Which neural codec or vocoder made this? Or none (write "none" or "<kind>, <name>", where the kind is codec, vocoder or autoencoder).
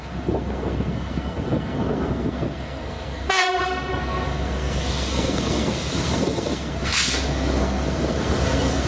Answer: codec, SNAC